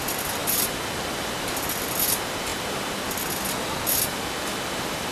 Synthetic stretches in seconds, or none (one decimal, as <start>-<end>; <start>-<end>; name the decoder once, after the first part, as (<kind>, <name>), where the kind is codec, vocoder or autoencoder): none